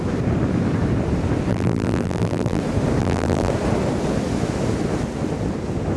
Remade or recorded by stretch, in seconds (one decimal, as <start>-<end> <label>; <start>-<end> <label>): 0.0-1.5 recorded; 1.5-2.6 remade; 2.6-3.0 recorded; 3.0-3.5 remade; 3.5-6.0 recorded